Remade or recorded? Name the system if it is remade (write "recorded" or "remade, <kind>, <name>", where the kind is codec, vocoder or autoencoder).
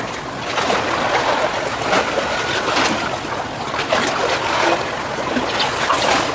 recorded